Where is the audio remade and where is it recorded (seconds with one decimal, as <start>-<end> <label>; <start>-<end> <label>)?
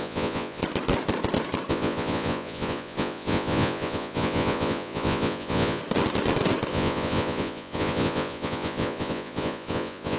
0.0-0.6 remade; 0.6-1.7 recorded; 1.7-5.8 remade; 5.8-6.7 recorded; 6.7-10.2 remade